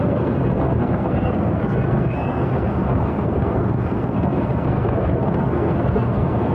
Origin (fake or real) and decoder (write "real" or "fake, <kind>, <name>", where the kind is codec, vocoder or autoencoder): fake, codec, SNAC